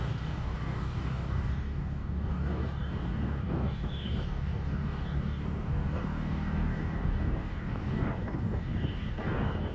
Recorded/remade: remade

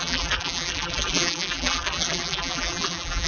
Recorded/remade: remade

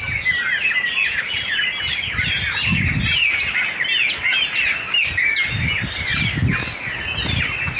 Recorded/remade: recorded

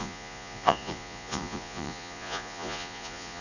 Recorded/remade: remade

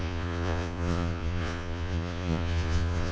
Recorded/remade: remade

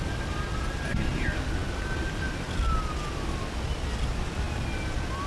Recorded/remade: recorded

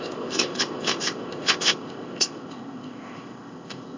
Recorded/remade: remade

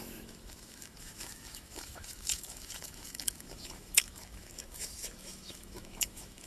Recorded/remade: remade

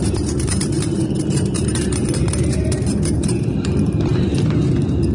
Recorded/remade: remade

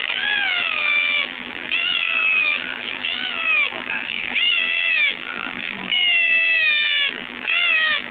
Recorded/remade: remade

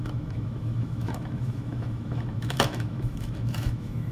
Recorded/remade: remade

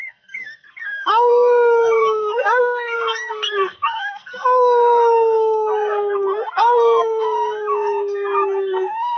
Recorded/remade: remade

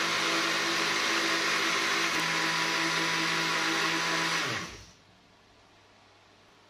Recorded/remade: recorded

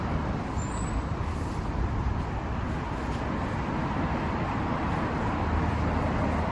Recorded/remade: recorded